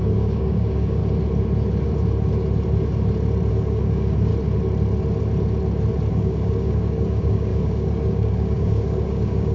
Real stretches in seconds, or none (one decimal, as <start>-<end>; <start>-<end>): 1.0-3.5; 4.3-6.1